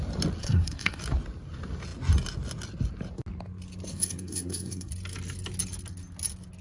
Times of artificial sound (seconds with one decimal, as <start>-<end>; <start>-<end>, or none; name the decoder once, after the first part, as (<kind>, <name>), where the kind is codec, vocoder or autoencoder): 0.4-1.0 (codec, SNAC); 3.9-4.9